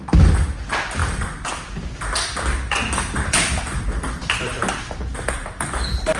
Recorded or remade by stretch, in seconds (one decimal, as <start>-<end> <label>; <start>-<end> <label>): 0.0-6.2 recorded